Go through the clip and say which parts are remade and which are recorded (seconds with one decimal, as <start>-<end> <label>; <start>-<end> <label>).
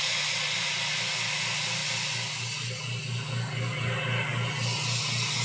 0.0-5.4 recorded